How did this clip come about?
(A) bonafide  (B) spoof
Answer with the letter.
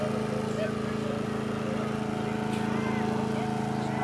A